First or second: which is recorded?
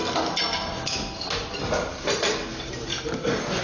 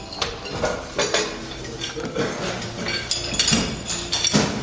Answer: second